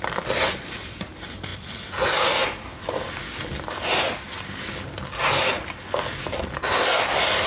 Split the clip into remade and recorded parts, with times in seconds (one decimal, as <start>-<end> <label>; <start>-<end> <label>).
0.0-7.5 recorded